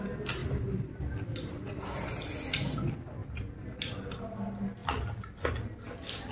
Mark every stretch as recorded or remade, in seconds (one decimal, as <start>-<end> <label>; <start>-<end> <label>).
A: 0.0-6.3 recorded